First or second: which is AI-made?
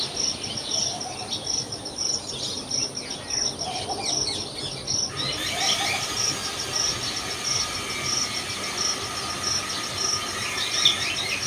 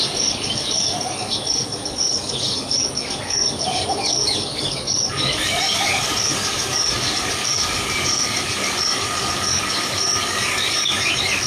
second